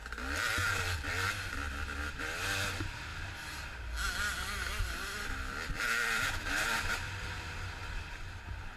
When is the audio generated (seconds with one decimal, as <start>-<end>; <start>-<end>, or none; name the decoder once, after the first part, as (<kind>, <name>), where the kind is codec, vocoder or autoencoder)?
none